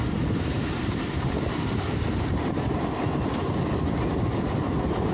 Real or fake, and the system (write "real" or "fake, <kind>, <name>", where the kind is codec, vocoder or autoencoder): fake, vocoder, BigVGAN v2